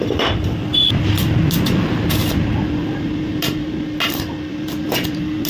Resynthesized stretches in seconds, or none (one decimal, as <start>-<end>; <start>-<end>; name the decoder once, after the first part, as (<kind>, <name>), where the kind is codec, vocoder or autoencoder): none